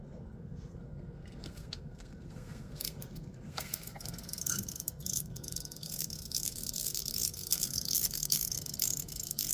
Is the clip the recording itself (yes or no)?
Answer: no